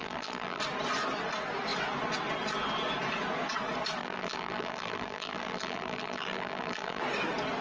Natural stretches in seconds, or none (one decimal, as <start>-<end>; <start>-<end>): 0.6-4.0; 7.0-7.6